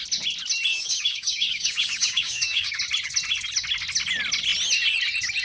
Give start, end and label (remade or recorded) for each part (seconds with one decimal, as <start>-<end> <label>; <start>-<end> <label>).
0.0-0.7 recorded; 0.7-2.8 remade; 2.8-5.4 recorded

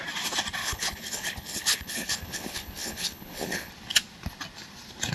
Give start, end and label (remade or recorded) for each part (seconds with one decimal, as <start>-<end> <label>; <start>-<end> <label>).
0.0-0.6 recorded; 0.6-3.7 remade; 3.7-5.1 recorded